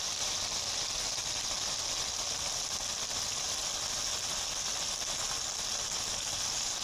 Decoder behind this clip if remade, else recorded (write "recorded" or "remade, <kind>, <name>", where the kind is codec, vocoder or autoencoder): recorded